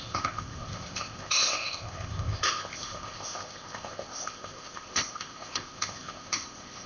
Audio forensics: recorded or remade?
remade